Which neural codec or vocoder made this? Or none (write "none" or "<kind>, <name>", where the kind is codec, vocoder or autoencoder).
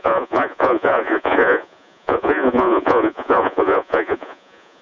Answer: vocoder, Vocos